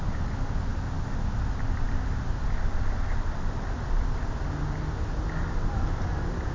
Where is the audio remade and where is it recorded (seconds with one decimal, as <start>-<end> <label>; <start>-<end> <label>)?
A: 0.0-6.5 recorded